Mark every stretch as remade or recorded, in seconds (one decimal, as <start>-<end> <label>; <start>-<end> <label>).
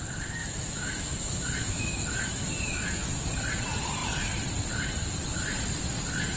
0.0-0.4 recorded; 0.4-3.1 remade; 3.1-6.4 recorded